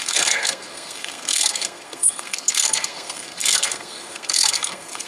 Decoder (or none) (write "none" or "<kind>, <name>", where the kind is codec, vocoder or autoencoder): codec, SNAC